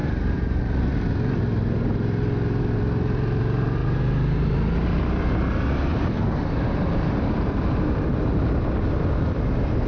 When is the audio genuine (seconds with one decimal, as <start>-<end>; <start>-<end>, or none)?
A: 0.6-3.8; 4.5-5.9; 8.1-9.9